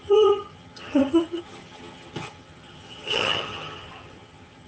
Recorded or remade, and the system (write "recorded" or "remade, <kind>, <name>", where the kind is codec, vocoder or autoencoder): remade, vocoder, HiFi-GAN